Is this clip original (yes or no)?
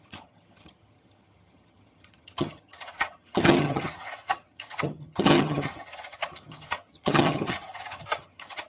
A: no